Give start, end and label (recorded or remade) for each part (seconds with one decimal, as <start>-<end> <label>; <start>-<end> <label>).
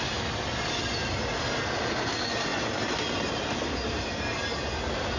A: 0.0-5.2 recorded